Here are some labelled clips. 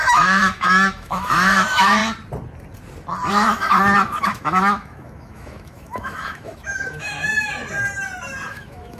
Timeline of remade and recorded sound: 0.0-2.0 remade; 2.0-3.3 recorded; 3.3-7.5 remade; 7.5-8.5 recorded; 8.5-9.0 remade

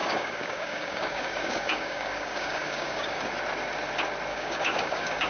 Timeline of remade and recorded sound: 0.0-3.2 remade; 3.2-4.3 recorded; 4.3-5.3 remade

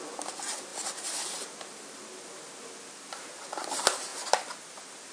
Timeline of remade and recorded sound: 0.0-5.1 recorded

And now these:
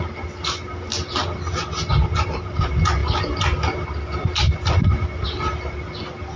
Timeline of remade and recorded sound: 0.0-6.4 recorded

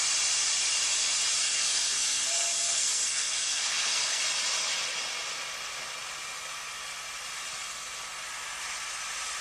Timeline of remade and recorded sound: 0.0-1.4 recorded; 1.4-4.2 remade; 4.2-9.4 recorded

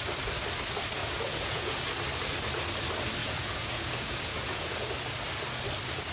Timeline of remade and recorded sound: 0.0-1.0 recorded; 1.0-1.8 remade; 1.8-3.2 recorded; 3.2-4.9 remade; 4.9-6.1 recorded

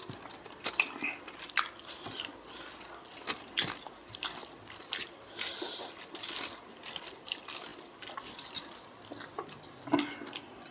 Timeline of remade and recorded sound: 0.0-10.7 recorded

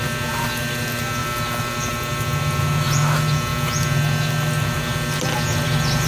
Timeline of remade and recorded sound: 0.0-6.1 recorded